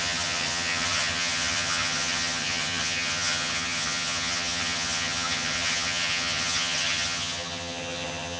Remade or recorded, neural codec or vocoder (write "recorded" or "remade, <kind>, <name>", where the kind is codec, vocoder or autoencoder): remade, vocoder, HiFi-GAN